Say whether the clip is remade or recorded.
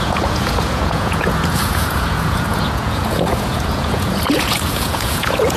remade